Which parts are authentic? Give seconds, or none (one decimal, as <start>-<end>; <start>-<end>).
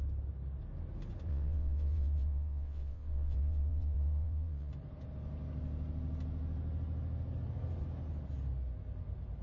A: 0.0-1.3; 4.7-9.4